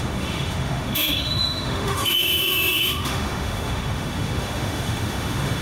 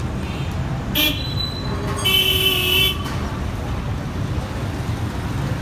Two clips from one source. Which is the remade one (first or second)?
first